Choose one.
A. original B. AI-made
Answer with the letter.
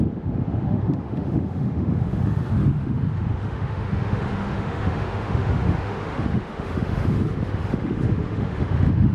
B